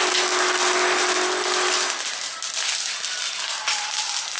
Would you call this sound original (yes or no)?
yes